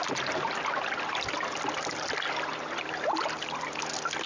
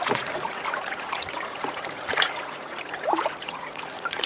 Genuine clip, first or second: first